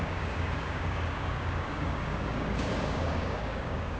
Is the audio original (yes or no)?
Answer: no